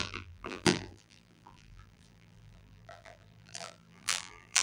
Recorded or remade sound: remade